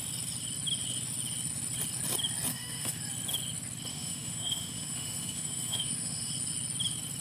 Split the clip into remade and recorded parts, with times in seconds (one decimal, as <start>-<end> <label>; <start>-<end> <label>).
0.0-2.5 recorded; 2.5-3.0 remade; 3.0-3.9 recorded; 3.9-6.3 remade; 6.3-7.2 recorded